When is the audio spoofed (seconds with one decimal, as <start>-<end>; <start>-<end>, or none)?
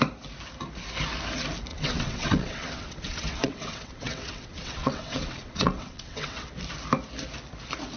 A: 1.7-6.5